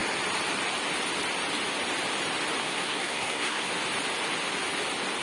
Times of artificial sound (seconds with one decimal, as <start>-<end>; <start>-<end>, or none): 2.6-3.7